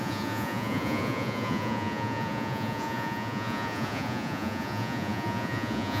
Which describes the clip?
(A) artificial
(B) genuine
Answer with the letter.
A